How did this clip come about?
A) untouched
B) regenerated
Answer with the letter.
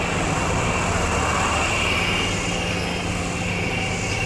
A